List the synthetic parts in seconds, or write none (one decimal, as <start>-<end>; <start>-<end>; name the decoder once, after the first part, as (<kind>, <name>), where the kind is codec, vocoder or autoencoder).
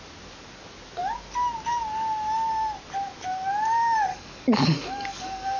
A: 4.1-5.6 (codec, DAC)